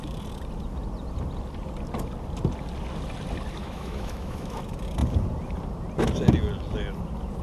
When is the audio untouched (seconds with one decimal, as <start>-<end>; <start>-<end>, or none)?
0.0-3.6; 4.6-7.4